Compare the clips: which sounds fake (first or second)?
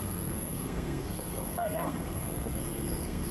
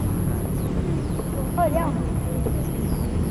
first